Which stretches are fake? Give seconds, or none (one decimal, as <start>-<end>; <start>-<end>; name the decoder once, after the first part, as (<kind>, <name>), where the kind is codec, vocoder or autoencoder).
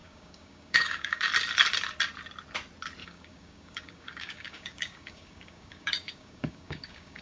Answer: 0.0-1.3 (codec, DAC); 3.0-7.2